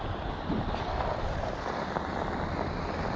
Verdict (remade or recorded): recorded